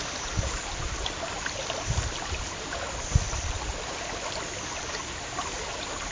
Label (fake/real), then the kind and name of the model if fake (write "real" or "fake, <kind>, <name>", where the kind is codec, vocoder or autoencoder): real